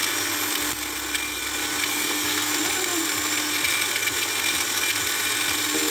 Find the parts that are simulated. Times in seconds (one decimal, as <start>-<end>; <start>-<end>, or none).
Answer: 1.9-2.5